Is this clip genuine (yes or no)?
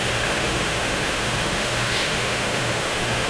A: no